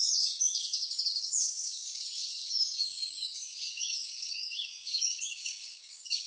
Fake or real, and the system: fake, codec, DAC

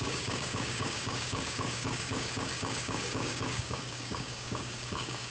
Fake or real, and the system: fake, codec, DAC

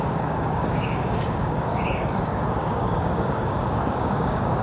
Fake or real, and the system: fake, codec, DAC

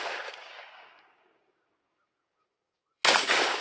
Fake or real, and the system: fake, codec, DAC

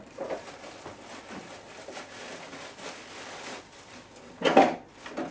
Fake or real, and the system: real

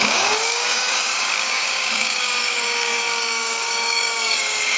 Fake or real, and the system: fake, codec, DAC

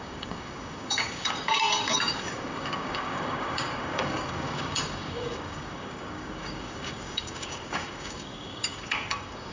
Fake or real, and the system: fake, codec, DAC